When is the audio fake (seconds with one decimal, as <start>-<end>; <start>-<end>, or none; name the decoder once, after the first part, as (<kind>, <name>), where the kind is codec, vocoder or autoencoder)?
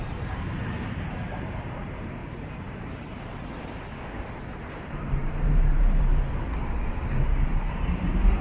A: 0.0-2.2 (vocoder, BigVGAN v2); 4.8-6.1; 6.9-8.4